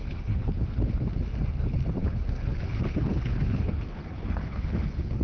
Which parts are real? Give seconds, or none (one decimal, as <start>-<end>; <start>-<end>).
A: 1.0-2.0